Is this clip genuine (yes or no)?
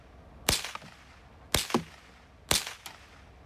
yes